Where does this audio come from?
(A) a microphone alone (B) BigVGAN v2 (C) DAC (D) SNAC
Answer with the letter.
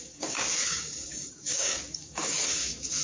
C